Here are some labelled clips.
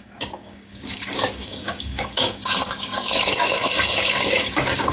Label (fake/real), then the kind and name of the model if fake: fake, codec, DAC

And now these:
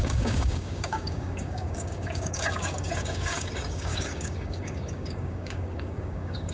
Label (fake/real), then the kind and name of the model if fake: fake, codec, DAC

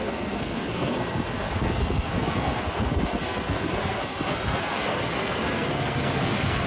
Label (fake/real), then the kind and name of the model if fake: fake, codec, SNAC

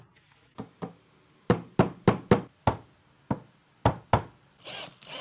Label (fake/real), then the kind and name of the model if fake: real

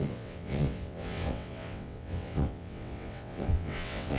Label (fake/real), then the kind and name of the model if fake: fake, vocoder, WaveNeXt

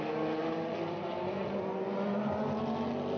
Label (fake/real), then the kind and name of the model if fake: real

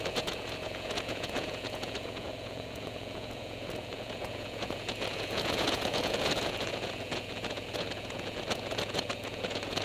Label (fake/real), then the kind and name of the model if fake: fake, vocoder, Vocos